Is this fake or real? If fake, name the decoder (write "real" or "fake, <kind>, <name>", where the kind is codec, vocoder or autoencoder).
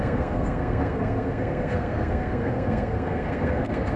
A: fake, codec, SNAC